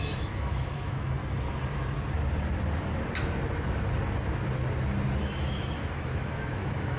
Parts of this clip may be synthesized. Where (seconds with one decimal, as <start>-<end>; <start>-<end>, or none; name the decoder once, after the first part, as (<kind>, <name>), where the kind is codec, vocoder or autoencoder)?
0.0-1.2 (autoencoder, DAC-VAE); 5.2-7.0